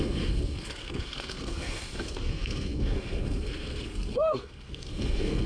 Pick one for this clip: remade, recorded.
remade